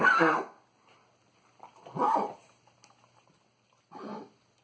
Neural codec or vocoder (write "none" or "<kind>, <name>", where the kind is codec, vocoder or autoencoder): none